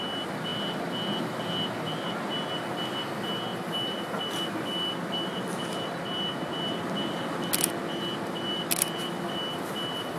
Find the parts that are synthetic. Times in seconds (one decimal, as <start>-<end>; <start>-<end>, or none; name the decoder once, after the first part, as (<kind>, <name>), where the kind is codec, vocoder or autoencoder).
none